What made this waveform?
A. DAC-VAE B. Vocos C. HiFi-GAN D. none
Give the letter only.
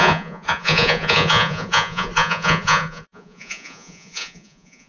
B